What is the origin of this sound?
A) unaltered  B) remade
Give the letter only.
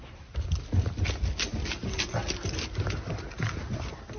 A